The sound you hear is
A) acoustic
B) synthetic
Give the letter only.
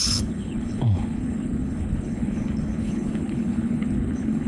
B